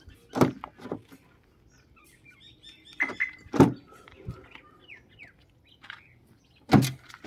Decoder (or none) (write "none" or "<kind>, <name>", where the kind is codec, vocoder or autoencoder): none